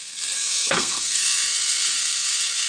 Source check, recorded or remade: remade